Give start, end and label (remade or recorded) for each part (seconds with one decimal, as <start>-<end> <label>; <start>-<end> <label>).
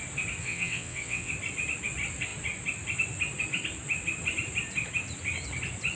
0.0-0.4 recorded; 0.4-1.3 remade; 1.3-6.0 recorded